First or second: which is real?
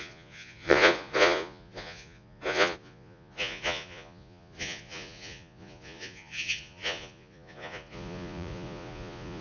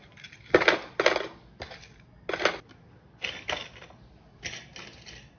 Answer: second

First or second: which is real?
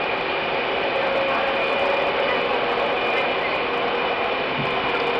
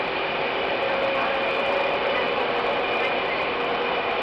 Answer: first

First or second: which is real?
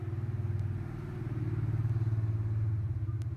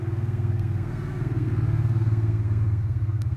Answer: first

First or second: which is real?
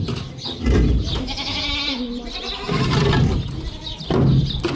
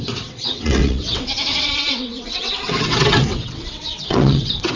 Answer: first